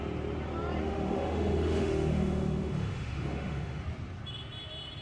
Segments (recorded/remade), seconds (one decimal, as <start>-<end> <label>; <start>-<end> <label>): 0.0-0.8 recorded; 0.8-3.8 remade; 3.8-5.0 recorded